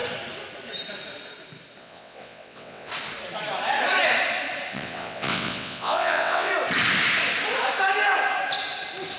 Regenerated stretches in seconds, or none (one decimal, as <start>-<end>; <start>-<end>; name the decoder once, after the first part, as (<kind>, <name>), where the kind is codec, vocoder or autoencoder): 1.8-2.9 (vocoder, WaveNeXt); 4.7-6.5

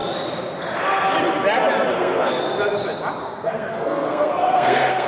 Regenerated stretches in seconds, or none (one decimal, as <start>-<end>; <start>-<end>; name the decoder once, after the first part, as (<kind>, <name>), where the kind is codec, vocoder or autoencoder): 1.9-2.4 (codec, SNAC); 3.2-5.1

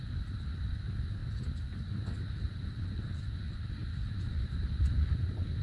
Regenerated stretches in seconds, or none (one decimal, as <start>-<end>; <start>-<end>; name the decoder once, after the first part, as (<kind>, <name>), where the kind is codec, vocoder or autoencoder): none

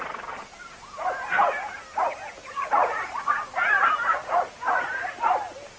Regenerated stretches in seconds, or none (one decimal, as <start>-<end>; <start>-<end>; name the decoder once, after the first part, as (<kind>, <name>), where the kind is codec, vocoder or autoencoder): 2.4-3.3 (vocoder, Vocos); 4.2-5.1